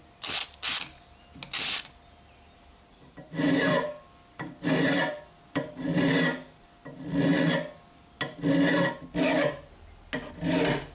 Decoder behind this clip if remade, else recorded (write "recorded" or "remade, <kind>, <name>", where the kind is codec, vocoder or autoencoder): recorded